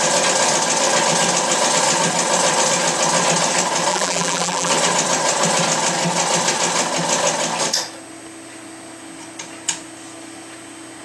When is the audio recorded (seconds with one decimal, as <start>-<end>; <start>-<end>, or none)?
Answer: 0.0-3.9; 4.7-11.0